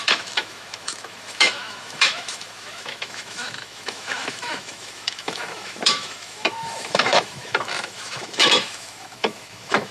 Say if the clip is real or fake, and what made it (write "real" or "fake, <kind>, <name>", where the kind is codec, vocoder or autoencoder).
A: fake, autoencoder, DAC-VAE